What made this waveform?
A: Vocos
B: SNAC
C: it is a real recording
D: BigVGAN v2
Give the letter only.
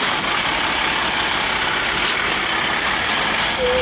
C